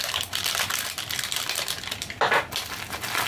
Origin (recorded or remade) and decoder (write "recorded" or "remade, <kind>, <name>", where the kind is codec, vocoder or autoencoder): recorded